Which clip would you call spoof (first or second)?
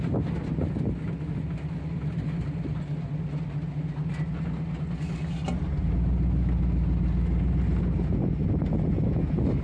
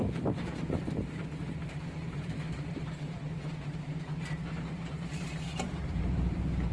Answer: second